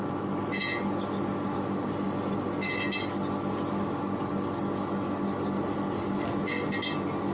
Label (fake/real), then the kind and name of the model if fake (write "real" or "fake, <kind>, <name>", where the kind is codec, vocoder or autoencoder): real